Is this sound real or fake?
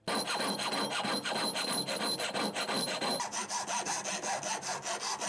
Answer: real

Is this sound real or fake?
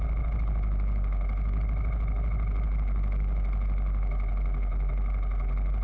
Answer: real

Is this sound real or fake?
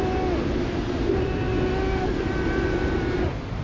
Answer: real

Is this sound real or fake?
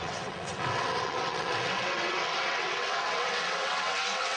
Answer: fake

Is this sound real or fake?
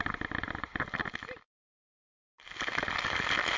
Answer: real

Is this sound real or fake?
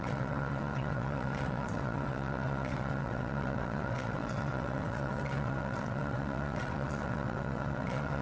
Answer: fake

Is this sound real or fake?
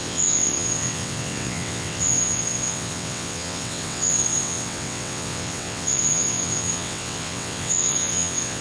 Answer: fake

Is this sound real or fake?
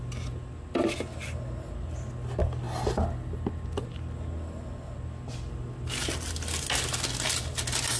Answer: real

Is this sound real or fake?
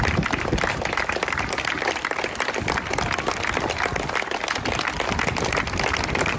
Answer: real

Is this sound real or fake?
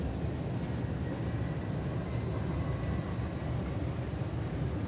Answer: real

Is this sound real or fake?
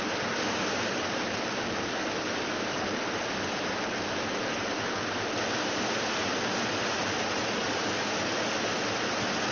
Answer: real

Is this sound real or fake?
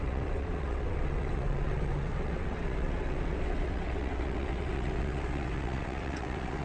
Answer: fake